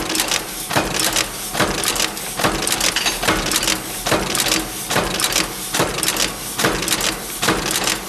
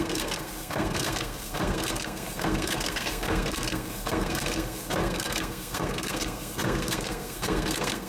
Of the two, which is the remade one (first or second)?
second